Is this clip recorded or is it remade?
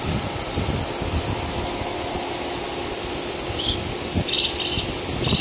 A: recorded